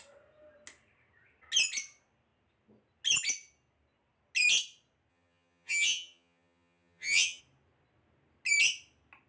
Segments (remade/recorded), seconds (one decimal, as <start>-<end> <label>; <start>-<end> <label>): 0.0-5.1 recorded; 5.1-7.4 remade; 7.4-9.3 recorded